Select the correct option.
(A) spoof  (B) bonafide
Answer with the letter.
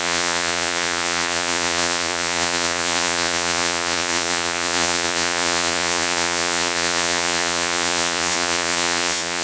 A